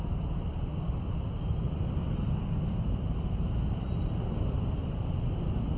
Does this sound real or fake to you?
real